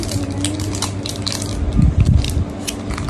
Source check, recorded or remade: recorded